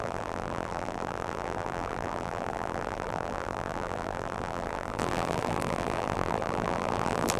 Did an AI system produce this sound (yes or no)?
yes